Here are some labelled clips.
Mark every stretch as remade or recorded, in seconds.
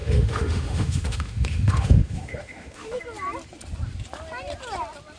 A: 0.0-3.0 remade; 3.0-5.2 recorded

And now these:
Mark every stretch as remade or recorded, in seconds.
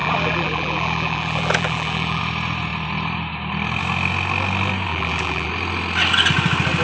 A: 0.0-2.2 remade; 2.2-4.9 recorded; 4.9-5.5 remade; 5.5-6.8 recorded